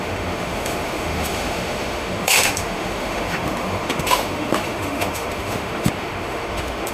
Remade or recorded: remade